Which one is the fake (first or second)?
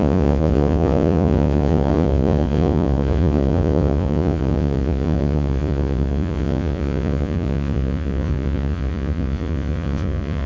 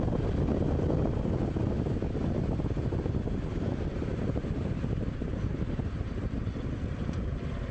first